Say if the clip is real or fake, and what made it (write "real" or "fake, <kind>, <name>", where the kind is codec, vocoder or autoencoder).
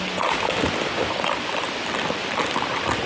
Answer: real